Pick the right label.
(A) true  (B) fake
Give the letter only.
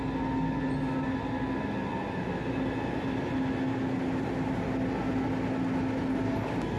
A